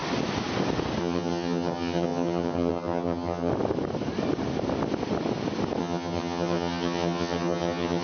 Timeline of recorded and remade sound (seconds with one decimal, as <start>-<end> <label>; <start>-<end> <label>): 0.0-1.0 recorded; 1.0-3.5 remade; 3.5-5.8 recorded; 5.8-8.0 remade